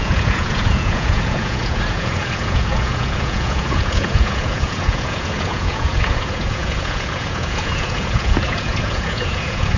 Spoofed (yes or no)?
yes